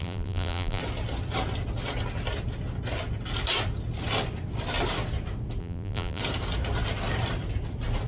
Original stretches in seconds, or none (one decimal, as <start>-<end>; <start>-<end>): 0.8-5.6; 6.2-8.1